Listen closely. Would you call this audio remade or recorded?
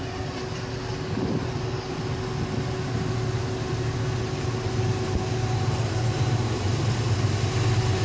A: recorded